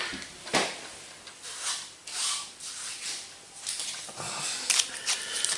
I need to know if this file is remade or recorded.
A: recorded